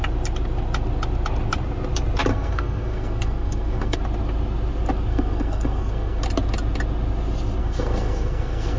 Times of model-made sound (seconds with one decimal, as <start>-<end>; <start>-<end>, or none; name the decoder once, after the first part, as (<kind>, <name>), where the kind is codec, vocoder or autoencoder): 2.3-4.0 (codec, SNAC); 5.1-6.2; 7.6-8.8